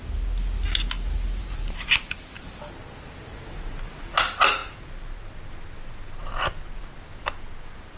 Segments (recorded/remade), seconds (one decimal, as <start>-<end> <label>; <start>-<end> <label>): 0.0-1.4 recorded; 1.4-2.4 remade; 2.4-8.0 recorded